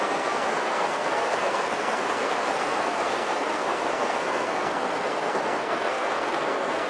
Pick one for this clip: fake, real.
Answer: fake